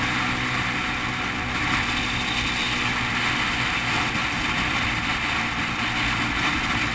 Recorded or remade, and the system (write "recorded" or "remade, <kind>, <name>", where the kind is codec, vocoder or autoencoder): recorded